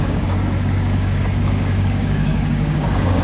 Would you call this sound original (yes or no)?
no